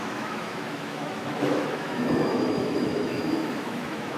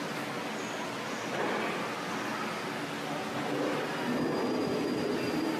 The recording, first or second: second